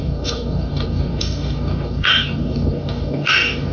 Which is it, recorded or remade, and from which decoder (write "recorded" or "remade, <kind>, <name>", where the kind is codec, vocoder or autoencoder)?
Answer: remade, codec, DAC